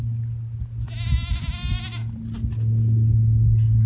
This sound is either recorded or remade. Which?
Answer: recorded